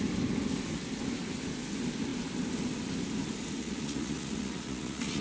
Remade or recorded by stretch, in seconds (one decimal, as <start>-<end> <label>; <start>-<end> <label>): 0.0-3.6 recorded; 3.6-5.2 remade

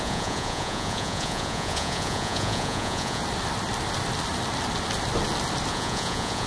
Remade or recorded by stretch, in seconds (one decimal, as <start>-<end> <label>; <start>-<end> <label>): 0.0-3.2 remade; 3.2-5.7 recorded; 5.7-6.5 remade

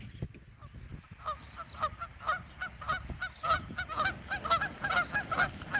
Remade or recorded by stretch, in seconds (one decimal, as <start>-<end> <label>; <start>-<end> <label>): 0.0-5.8 recorded

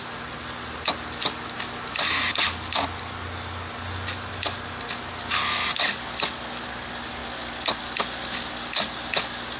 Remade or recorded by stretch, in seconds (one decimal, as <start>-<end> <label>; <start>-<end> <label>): 0.0-9.6 recorded

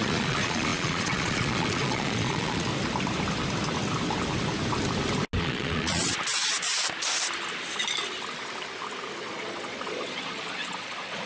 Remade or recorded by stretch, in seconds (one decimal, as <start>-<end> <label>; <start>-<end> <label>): 0.0-2.7 remade; 2.7-5.4 recorded; 5.4-6.1 remade; 6.1-9.2 recorded; 9.2-11.3 remade

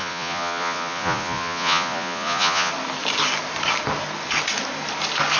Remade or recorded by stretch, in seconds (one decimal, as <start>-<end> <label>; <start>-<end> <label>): 0.0-2.7 remade; 2.7-5.4 recorded

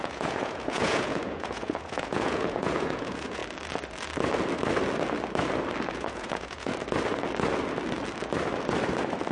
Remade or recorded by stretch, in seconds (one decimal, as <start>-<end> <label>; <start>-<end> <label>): 0.0-3.4 remade; 3.4-5.9 recorded; 5.9-6.7 remade; 6.7-9.3 recorded